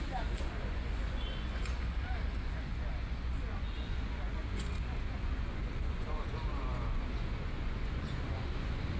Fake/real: fake